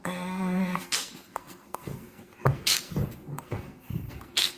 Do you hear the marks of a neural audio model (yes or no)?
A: yes